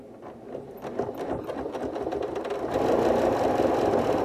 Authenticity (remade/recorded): recorded